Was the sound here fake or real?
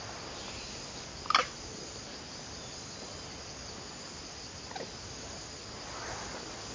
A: real